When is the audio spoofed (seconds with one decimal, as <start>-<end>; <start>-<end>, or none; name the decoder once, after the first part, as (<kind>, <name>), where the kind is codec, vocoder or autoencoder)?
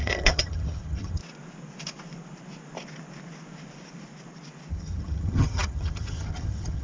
0.0-1.2 (vocoder, HiFi-GAN); 4.7-6.8